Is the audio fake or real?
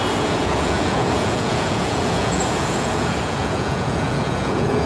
fake